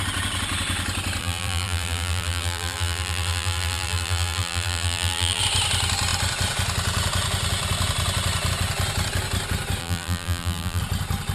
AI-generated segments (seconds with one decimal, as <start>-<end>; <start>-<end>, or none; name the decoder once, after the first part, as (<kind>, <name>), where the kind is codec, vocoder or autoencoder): 1.2-5.4 (vocoder, BigVGAN v2); 9.8-10.8